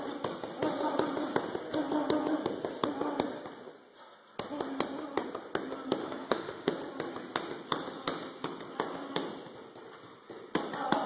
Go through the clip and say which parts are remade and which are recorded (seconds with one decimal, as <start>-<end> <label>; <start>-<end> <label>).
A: 0.0-6.0 recorded; 6.0-6.7 remade; 6.7-11.1 recorded